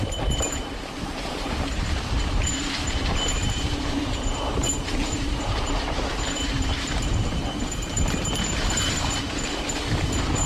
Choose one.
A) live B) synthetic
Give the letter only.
B